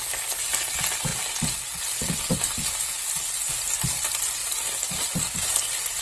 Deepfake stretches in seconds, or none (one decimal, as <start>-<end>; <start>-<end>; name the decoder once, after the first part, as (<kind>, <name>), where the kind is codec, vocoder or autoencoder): none